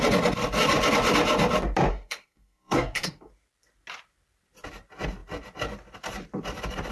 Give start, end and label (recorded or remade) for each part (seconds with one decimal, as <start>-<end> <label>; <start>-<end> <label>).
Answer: 0.0-1.9 recorded; 1.9-3.3 remade; 3.3-6.9 recorded